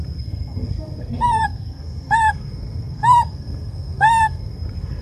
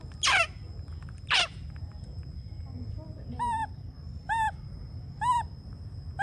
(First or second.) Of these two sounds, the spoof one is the first